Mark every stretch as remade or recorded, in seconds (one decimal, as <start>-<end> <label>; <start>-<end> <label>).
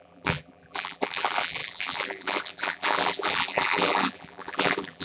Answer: 0.0-5.0 remade